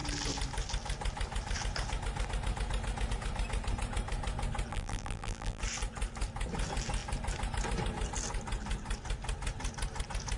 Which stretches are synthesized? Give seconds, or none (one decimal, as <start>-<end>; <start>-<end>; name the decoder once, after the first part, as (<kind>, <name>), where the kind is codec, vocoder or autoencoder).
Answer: 4.7-5.6 (vocoder, BigVGAN v2)